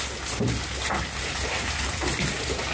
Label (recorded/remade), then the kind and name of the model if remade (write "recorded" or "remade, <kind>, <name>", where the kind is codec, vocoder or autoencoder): recorded